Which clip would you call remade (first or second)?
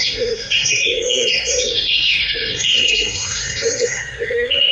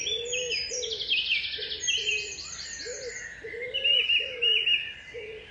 first